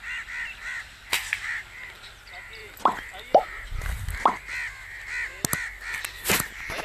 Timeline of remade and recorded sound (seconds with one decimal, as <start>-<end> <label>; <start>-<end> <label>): 0.0-0.6 recorded; 0.6-1.5 remade; 1.5-6.8 recorded

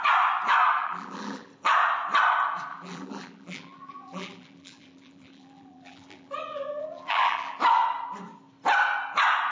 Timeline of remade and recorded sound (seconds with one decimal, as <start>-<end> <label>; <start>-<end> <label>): 0.0-0.8 recorded; 0.8-1.5 remade; 1.5-2.7 recorded; 2.7-7.6 remade; 7.6-9.5 recorded

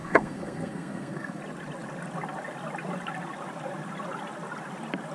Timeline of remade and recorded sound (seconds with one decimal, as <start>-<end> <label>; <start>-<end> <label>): 0.0-1.4 remade; 1.4-5.1 recorded

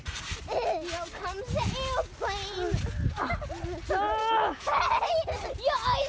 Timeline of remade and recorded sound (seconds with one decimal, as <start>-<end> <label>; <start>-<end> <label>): 0.0-4.2 recorded; 4.2-4.8 remade; 4.8-6.1 recorded

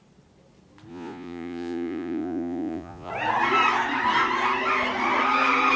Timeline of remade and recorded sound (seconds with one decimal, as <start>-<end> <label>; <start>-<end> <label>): 0.0-0.9 recorded; 0.9-3.1 remade; 3.1-5.8 recorded

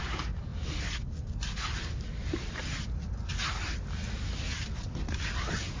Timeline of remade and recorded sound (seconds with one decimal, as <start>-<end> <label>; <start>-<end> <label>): 0.0-5.8 recorded